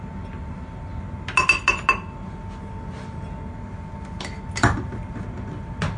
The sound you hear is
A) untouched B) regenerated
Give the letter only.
A